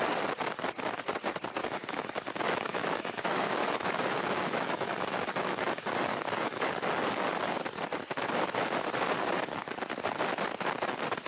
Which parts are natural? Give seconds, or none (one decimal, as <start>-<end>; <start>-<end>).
0.0-1.6; 6.7-11.3